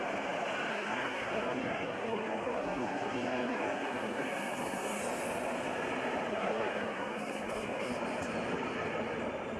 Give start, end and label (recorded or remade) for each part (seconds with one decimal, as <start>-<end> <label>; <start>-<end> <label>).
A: 0.0-0.7 recorded; 0.7-5.0 remade; 5.0-6.3 recorded; 6.3-7.9 remade; 7.9-9.6 recorded